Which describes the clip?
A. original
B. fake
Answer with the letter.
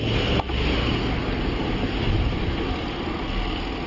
A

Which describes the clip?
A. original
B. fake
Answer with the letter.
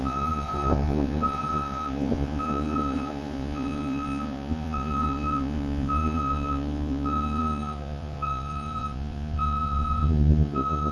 B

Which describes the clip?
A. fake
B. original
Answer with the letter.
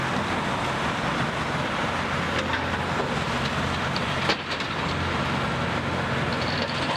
A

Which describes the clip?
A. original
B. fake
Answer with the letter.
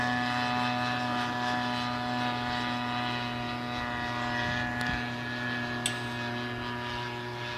A